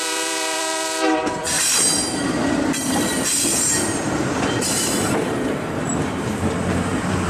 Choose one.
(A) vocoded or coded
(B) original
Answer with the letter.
A